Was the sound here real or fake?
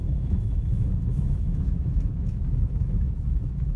fake